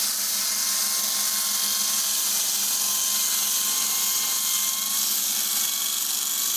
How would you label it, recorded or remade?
recorded